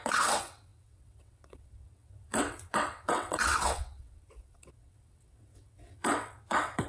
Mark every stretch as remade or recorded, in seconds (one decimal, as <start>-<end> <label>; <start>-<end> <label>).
0.0-6.9 remade

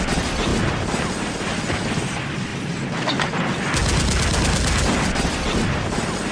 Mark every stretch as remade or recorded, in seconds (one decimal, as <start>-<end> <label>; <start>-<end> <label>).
0.0-6.3 recorded

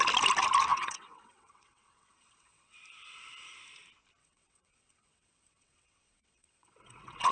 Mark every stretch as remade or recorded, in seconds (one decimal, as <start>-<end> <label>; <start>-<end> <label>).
0.0-0.7 recorded; 0.7-2.8 remade; 2.8-4.2 recorded; 4.2-7.3 remade

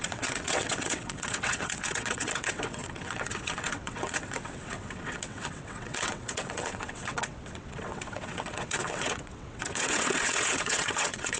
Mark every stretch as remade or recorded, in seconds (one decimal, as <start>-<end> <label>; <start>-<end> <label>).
0.0-11.4 remade

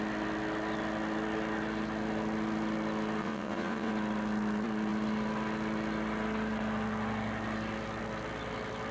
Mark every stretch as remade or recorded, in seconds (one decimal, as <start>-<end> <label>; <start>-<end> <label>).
0.0-3.2 recorded; 3.2-3.9 remade; 3.9-8.9 recorded

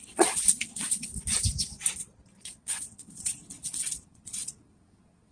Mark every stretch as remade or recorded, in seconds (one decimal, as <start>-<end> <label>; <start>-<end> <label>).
0.0-1.1 remade; 1.1-2.4 recorded; 2.4-5.3 remade